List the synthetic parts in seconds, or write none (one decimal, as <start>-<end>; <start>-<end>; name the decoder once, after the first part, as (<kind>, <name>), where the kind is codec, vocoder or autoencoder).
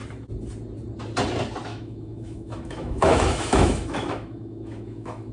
1.7-5.3 (autoencoder, DAC-VAE)